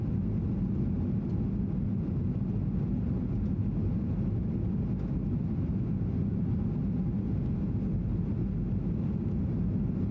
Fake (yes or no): no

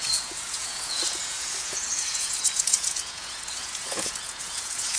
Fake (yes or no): yes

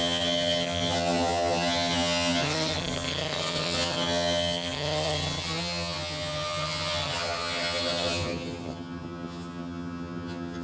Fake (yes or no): yes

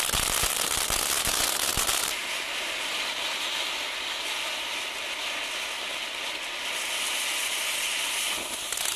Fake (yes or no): no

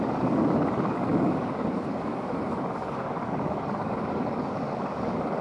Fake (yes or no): yes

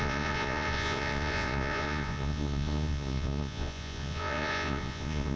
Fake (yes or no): yes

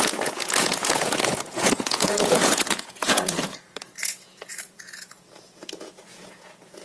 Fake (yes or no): yes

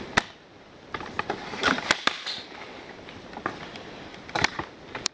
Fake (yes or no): yes